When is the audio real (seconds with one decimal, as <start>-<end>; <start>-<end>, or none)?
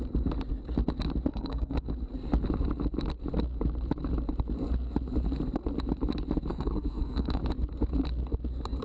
0.0-1.3; 1.9-6.5; 7.4-8.8